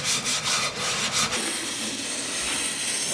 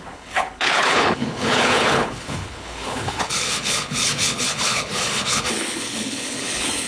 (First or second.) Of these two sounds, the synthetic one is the second